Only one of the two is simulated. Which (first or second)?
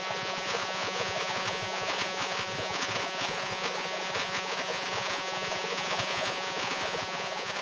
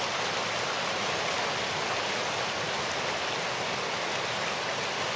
first